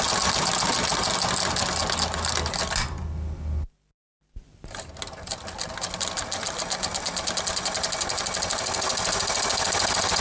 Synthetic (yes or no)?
no